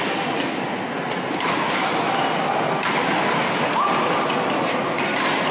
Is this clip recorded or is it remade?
recorded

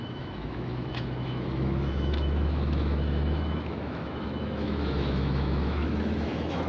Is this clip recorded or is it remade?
remade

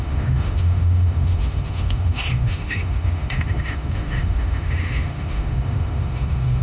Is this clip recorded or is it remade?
remade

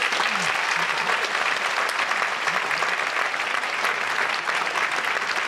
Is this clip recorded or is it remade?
recorded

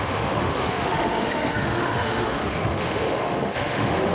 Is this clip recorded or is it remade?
remade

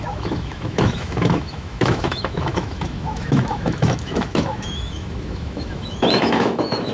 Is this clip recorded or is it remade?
remade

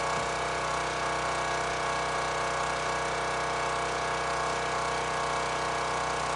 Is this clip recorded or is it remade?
recorded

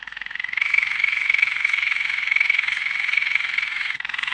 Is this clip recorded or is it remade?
remade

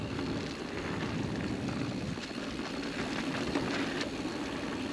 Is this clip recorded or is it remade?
recorded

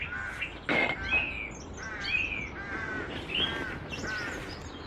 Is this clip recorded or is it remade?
recorded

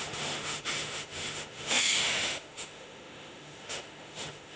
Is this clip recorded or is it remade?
remade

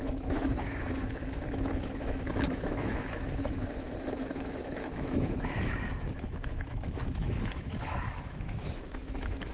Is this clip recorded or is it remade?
remade